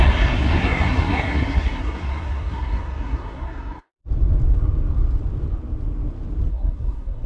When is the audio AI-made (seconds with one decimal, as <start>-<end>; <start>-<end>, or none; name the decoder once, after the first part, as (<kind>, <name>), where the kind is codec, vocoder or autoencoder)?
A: 0.0-4.0 (codec, SNAC); 6.5-7.3